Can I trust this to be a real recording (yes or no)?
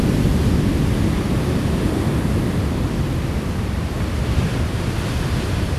yes